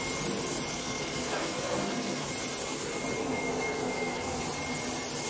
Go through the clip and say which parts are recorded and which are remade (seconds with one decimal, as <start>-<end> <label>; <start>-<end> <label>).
0.0-0.7 recorded; 0.7-2.3 remade; 2.3-3.2 recorded; 3.2-4.4 remade; 4.4-5.3 recorded